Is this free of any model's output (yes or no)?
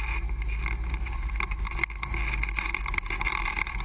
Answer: yes